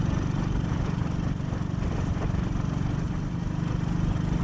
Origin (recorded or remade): recorded